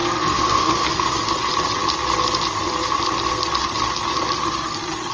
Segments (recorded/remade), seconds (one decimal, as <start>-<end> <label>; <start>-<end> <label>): 0.0-1.2 remade; 1.2-5.1 recorded